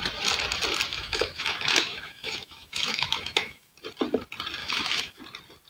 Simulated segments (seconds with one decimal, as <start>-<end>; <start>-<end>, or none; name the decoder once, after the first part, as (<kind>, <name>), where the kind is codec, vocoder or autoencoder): 0.9-3.7 (autoencoder, DAC-VAE); 4.6-5.2